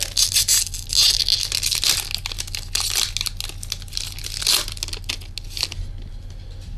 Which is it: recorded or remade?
recorded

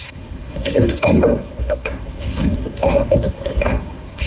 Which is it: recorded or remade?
remade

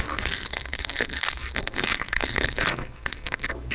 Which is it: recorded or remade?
remade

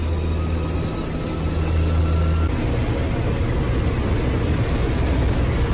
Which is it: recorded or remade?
recorded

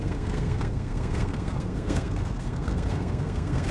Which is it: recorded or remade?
remade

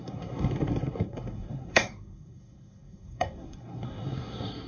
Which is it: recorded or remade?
remade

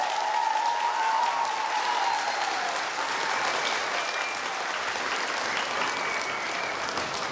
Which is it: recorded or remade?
recorded